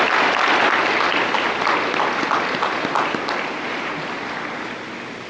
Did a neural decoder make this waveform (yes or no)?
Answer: no